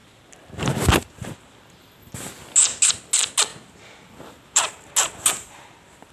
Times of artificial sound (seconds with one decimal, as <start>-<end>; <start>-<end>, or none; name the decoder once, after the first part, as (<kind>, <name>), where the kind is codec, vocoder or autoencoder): none